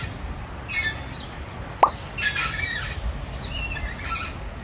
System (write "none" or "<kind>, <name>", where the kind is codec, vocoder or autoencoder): none